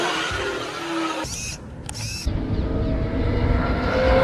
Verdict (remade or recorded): recorded